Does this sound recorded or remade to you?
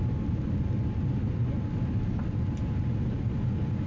recorded